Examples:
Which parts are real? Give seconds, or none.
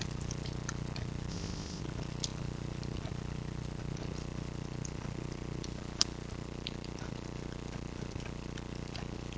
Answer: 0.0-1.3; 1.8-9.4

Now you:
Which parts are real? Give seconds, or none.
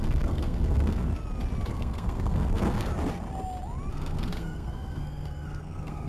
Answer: 1.1-1.7; 2.9-3.9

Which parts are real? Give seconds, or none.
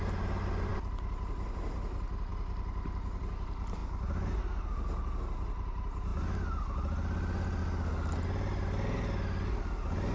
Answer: 0.0-10.1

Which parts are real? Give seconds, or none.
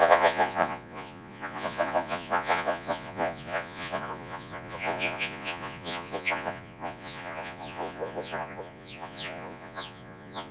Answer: none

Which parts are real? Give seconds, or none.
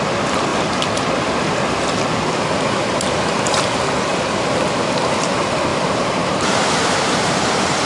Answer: 0.0-5.7